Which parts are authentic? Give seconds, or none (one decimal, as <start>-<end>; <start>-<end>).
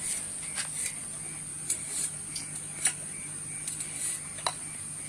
0.0-5.1